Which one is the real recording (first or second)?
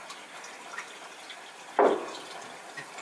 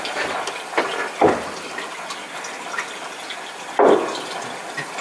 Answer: second